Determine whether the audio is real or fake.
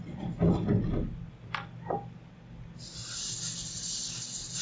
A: real